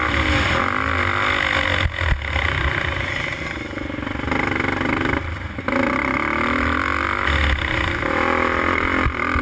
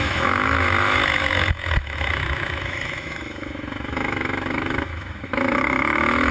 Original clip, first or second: first